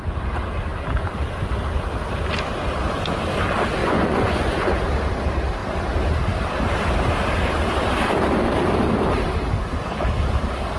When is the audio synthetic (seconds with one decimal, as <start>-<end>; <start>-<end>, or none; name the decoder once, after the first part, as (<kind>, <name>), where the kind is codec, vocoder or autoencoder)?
3.8-4.8 (vocoder, Vocos)

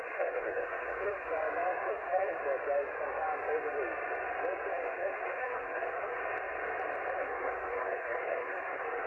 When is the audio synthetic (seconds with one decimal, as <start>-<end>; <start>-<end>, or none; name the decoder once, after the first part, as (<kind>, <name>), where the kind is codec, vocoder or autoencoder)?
0.0-1.3 (codec, SNAC); 1.9-2.4; 4.7-6.2; 7.2-9.1

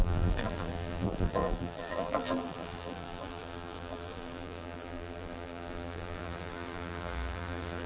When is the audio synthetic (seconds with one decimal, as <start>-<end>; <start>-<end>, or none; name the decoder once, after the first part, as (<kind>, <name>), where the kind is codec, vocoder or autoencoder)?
0.0-7.9 (vocoder, BigVGAN v2)

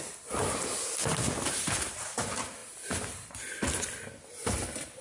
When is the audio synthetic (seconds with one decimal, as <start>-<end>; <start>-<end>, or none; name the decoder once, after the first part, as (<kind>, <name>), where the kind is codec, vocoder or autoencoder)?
none

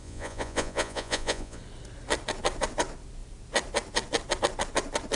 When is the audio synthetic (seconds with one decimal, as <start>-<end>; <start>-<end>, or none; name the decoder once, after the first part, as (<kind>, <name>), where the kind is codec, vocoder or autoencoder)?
0.0-1.6 (vocoder, Vocos)

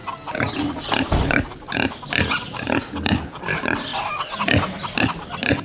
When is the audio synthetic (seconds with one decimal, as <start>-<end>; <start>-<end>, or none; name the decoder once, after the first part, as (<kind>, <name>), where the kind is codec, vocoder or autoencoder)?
3.4-3.9 (vocoder, BigVGAN v2)

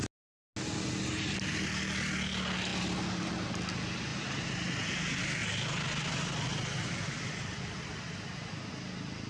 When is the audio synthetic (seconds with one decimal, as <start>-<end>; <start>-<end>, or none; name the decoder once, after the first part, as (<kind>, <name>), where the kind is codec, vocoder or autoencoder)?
4.1-4.7 (vocoder, BigVGAN v2)

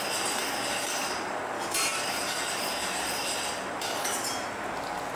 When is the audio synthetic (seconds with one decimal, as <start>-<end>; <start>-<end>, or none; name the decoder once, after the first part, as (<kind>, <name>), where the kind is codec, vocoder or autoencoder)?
0.4-1.4 (vocoder, BigVGAN v2); 1.9-4.0